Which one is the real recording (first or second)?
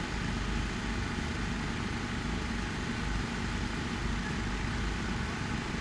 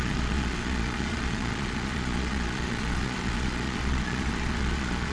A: first